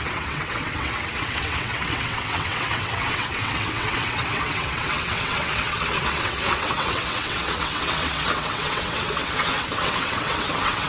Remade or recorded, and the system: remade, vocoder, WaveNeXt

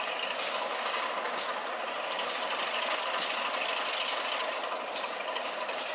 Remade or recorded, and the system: recorded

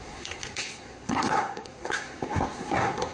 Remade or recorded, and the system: remade, codec, SNAC